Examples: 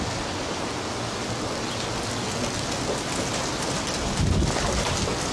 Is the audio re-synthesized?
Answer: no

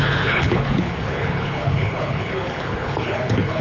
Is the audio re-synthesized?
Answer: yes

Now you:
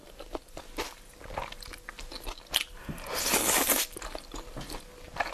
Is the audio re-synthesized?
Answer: no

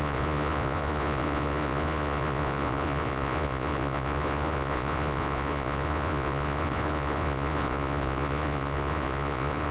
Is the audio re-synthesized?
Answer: yes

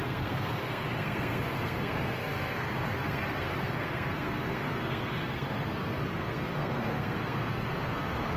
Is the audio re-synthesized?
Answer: yes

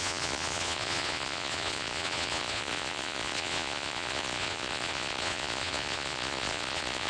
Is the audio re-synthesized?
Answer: yes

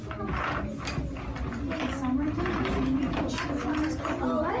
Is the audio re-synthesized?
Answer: no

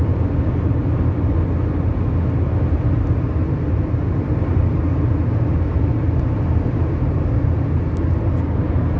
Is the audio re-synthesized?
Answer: no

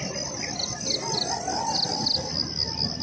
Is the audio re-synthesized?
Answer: no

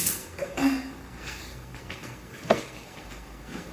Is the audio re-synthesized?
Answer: yes